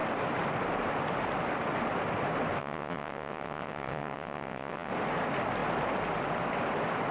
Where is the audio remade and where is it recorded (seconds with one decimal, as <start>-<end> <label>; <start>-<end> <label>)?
0.0-2.6 recorded; 2.6-4.9 remade; 4.9-7.1 recorded